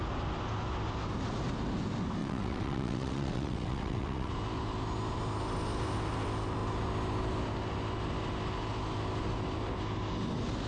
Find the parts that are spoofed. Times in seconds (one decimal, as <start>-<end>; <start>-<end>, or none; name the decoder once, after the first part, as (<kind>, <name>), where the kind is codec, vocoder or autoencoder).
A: 2.2-4.3 (vocoder, WaveNeXt)